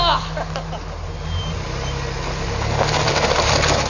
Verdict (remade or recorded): recorded